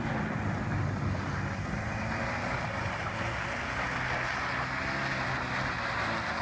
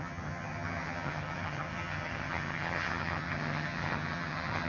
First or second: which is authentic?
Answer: first